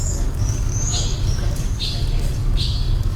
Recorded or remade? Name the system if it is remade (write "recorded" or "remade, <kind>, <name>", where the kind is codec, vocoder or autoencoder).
remade, codec, DAC